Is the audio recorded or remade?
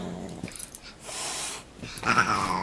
remade